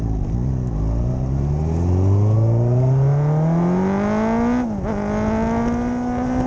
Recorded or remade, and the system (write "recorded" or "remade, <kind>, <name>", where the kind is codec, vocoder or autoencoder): recorded